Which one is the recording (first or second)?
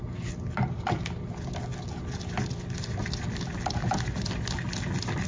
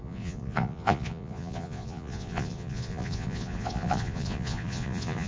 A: first